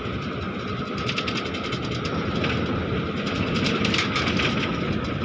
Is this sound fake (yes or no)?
no